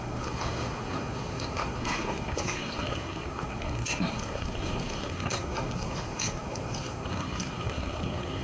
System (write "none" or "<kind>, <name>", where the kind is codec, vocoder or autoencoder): codec, SNAC